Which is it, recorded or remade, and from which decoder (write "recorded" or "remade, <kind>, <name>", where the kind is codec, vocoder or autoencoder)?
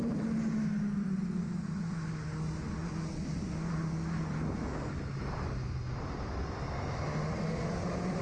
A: recorded